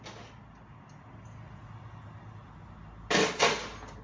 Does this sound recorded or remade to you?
recorded